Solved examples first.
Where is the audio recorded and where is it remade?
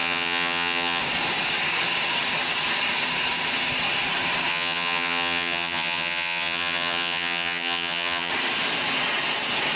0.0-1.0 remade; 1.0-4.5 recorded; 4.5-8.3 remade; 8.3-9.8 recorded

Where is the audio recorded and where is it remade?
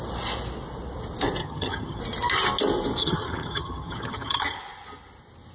0.0-1.4 recorded; 1.4-2.0 remade; 2.0-3.0 recorded; 3.0-4.6 remade; 4.6-5.5 recorded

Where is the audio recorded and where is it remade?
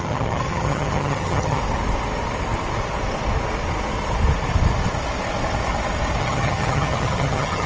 0.0-1.6 remade; 1.6-6.2 recorded; 6.2-7.7 remade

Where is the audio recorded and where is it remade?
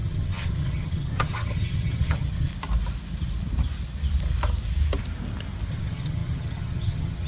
0.0-2.5 remade; 2.5-5.7 recorded; 5.7-7.3 remade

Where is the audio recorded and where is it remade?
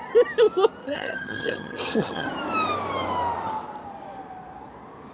0.0-0.8 recorded; 0.8-2.3 remade; 2.3-5.1 recorded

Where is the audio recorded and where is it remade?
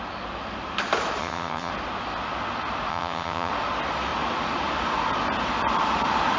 0.0-1.2 recorded; 1.2-1.7 remade; 1.7-2.9 recorded; 2.9-3.5 remade; 3.5-6.4 recorded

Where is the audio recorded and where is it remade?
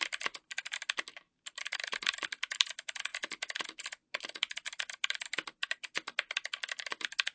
0.0-7.3 recorded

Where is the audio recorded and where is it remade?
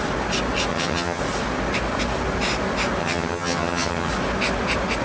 0.0-0.7 recorded; 0.7-1.2 remade; 1.2-3.0 recorded; 3.0-4.1 remade; 4.1-5.0 recorded